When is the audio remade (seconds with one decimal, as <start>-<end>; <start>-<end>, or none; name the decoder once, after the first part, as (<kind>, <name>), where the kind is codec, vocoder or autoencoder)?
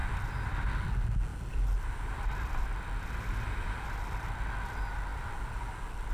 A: 0.0-0.5 (vocoder, BigVGAN v2); 1.3-4.3; 5.1-6.1